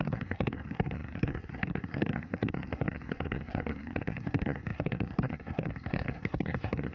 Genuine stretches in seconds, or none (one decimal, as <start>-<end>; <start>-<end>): none